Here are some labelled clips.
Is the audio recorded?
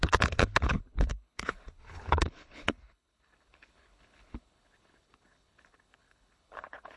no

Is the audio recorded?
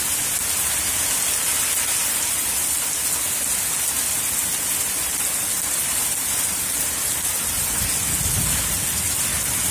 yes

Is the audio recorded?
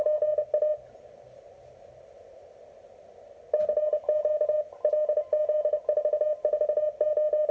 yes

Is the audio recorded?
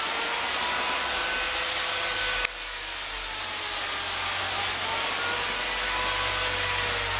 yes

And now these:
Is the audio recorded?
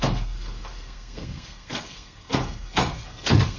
no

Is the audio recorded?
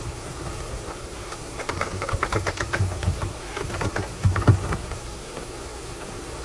no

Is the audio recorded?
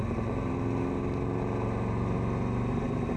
yes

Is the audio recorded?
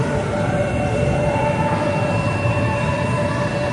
no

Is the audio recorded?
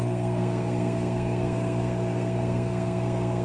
no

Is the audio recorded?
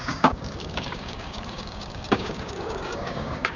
no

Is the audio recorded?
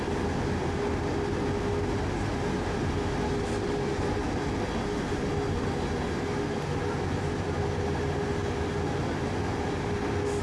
yes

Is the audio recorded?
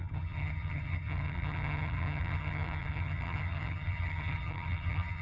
no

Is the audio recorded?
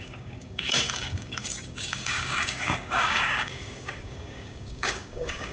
no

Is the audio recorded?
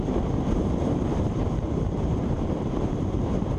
no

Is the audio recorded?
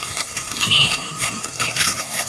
no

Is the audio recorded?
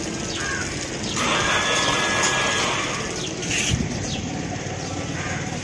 yes